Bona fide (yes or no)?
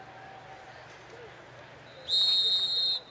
yes